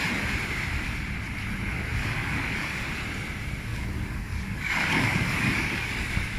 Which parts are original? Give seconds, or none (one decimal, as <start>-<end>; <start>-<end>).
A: 0.0-2.0; 2.9-3.7